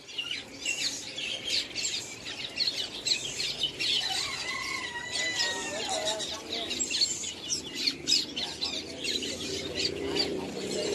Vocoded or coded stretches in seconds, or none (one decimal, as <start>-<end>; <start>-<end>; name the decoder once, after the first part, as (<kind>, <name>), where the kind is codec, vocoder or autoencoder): none